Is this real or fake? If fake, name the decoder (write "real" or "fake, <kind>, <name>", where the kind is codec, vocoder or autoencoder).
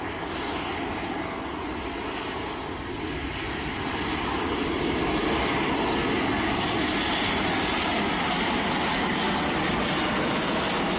real